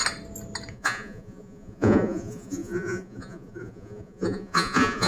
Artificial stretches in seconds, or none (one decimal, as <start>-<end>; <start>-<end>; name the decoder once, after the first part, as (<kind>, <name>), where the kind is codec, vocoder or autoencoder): 0.7-5.1 (vocoder, Vocos)